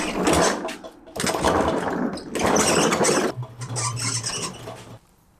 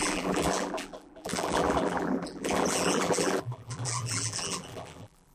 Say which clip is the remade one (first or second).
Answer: second